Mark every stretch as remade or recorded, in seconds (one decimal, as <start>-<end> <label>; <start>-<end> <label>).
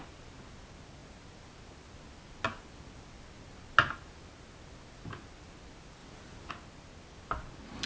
0.0-7.9 recorded